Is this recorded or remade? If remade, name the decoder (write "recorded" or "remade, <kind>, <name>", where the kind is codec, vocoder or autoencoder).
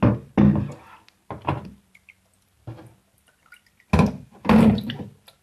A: recorded